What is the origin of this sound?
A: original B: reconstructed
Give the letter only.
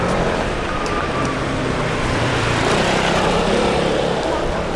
B